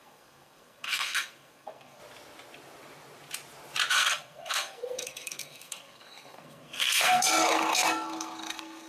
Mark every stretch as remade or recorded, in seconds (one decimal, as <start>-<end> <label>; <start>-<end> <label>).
0.0-2.0 remade; 2.0-3.9 recorded; 3.9-8.9 remade